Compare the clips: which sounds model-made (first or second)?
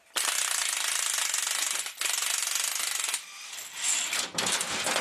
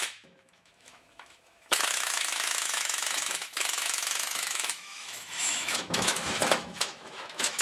second